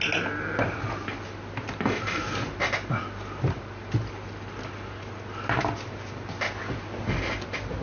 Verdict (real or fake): real